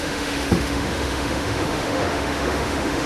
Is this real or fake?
fake